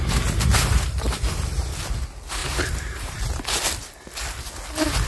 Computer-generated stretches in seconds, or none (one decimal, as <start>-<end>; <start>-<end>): 0.5-1.7; 2.4-3.4